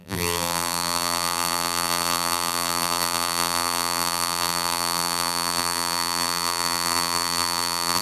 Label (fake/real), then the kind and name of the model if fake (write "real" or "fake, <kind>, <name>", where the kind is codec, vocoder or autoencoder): fake, vocoder, BigVGAN v2